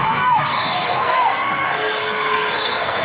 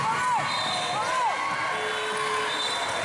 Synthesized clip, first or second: first